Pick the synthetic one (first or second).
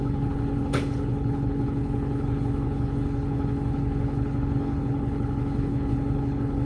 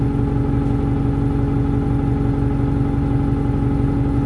first